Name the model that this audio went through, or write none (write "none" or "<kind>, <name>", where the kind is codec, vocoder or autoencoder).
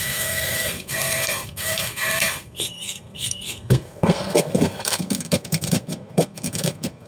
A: codec, SNAC